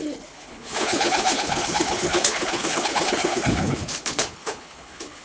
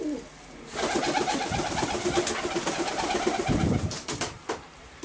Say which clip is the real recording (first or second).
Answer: second